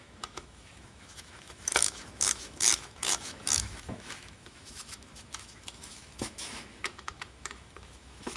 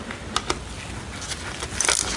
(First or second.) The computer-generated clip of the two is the first